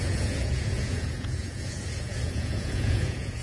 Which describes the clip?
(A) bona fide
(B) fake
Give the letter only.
B